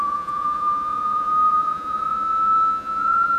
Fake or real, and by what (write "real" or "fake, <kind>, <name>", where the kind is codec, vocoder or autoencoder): fake, vocoder, Vocos